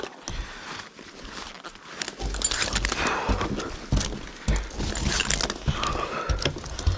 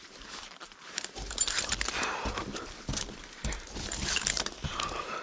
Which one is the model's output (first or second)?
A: second